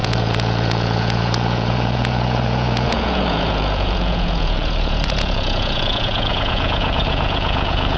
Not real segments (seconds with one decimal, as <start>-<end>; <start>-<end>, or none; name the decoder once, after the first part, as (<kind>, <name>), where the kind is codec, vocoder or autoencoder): 0.0-8.0 (vocoder, Vocos)